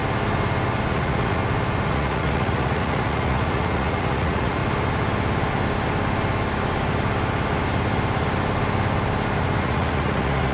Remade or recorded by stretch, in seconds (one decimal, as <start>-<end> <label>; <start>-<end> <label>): 0.0-0.9 recorded; 0.9-1.4 remade; 1.4-1.9 recorded; 1.9-4.6 remade; 4.6-9.6 recorded; 9.6-10.5 remade